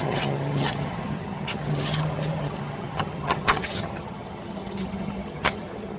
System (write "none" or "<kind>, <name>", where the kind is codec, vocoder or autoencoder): vocoder, HiFi-GAN